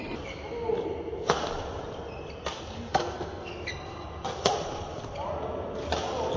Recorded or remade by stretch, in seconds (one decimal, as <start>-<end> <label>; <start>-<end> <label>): 0.0-2.9 recorded; 2.9-3.5 remade; 3.5-6.4 recorded

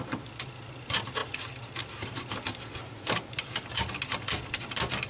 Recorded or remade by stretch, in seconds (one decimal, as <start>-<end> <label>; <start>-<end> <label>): 0.0-5.1 recorded

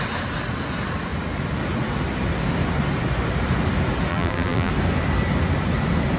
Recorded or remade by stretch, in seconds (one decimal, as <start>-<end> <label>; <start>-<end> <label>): 0.0-4.1 recorded; 4.1-4.7 remade; 4.7-6.2 recorded

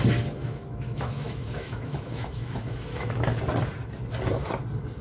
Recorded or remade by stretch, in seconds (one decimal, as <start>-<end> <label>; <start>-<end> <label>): 0.0-0.4 recorded; 0.4-3.4 remade; 3.4-5.0 recorded

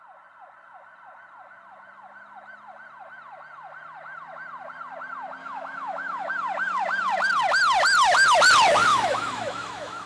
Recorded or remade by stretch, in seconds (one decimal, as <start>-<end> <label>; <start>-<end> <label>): 0.0-5.4 recorded; 5.4-6.3 remade; 6.3-8.9 recorded; 8.9-10.1 remade

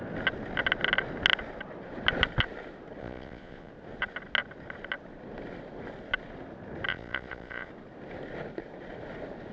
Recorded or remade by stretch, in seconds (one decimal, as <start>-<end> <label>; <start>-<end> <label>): 0.0-3.0 recorded; 3.0-3.7 remade; 3.7-6.9 recorded; 6.9-7.7 remade; 7.7-9.5 recorded

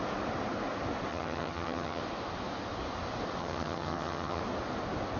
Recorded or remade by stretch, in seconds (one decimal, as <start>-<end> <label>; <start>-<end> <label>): 0.0-1.1 recorded; 1.1-2.0 remade; 2.0-3.4 recorded; 3.4-4.4 remade; 4.4-5.2 recorded

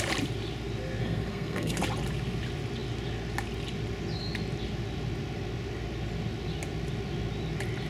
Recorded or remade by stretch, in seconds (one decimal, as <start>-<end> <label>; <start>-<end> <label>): 0.0-1.0 recorded; 1.0-1.8 remade; 1.8-7.9 recorded